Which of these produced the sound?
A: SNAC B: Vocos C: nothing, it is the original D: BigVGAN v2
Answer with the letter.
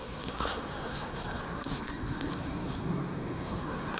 A